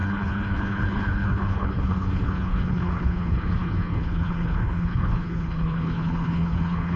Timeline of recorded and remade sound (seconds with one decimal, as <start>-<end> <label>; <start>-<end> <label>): 0.0-7.0 remade

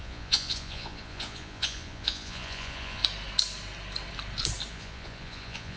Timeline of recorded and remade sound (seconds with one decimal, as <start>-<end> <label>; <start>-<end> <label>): 0.0-3.0 remade; 3.0-4.7 recorded; 4.7-5.8 remade

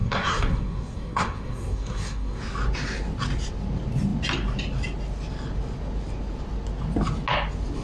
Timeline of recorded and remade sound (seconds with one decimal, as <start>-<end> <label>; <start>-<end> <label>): 0.0-2.4 remade; 2.4-7.8 recorded

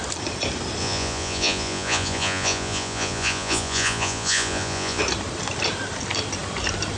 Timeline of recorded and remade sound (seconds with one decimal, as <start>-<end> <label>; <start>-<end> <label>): 0.0-0.8 recorded; 0.8-5.0 remade; 5.0-7.0 recorded